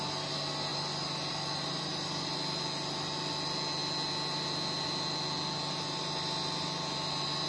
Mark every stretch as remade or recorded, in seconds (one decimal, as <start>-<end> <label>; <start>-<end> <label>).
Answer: 0.0-7.5 recorded